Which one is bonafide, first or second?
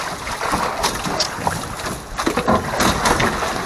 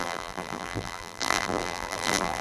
first